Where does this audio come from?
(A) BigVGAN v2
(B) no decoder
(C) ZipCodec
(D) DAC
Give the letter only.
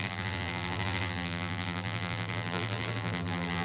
A